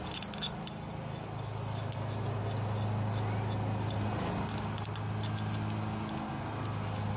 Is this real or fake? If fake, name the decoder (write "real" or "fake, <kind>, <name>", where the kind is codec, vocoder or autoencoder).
real